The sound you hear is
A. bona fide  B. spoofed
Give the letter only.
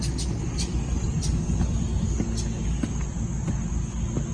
A